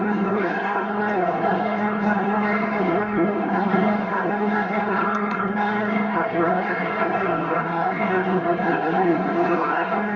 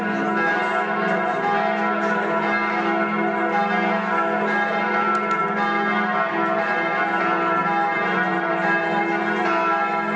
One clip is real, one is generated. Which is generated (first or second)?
first